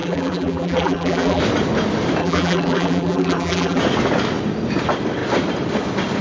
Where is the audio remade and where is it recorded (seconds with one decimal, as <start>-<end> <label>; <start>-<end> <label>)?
0.0-1.4 remade; 1.4-2.2 recorded; 2.2-3.8 remade; 3.8-6.2 recorded